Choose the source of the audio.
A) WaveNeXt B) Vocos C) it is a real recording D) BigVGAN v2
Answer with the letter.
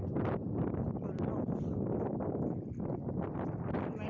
D